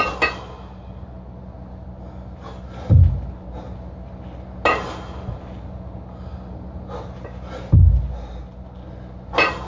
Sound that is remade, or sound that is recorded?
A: recorded